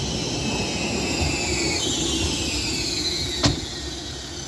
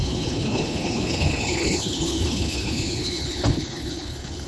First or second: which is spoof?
second